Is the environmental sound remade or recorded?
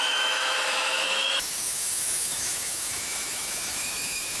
remade